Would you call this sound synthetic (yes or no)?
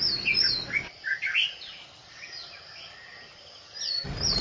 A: no